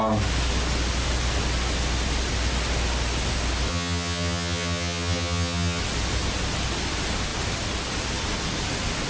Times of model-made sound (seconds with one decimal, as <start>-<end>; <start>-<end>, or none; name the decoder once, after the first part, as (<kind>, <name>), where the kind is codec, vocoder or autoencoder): 3.7-5.8 (vocoder, HiFi-GAN)

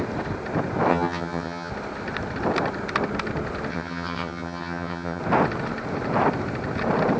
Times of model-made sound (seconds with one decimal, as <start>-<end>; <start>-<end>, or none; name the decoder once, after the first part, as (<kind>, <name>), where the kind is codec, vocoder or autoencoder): 0.9-1.7 (vocoder, HiFi-GAN); 3.7-5.2

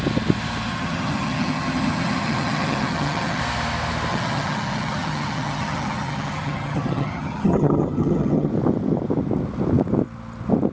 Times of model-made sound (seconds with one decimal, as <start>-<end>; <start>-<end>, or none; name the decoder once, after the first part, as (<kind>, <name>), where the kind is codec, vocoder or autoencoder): 0.7-3.4 (vocoder, HiFi-GAN); 4.1-8.5

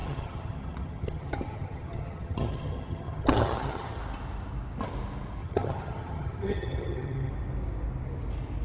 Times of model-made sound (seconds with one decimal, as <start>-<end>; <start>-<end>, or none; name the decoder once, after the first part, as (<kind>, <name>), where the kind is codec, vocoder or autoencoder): 0.0-4.0 (vocoder, HiFi-GAN); 5.4-7.3

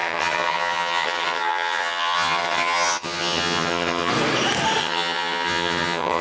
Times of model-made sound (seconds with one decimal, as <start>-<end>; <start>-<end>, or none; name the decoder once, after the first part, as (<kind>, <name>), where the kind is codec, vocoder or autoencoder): 0.0-4.1 (vocoder, HiFi-GAN); 4.8-6.2

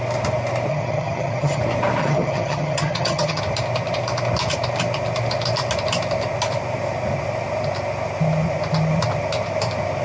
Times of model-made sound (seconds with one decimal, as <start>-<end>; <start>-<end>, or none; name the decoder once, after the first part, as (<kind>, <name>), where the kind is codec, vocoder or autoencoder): 0.7-1.6 (vocoder, HiFi-GAN); 2.0-3.4